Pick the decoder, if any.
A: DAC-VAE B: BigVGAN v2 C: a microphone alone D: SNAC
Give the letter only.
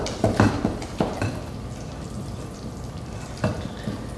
B